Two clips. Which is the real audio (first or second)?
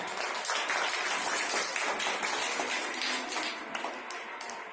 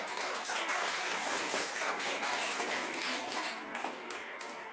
first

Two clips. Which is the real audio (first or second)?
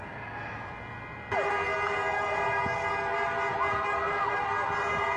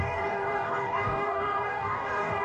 first